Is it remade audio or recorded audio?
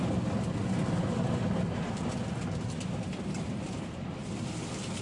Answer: recorded